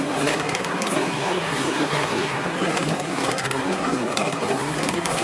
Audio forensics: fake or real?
fake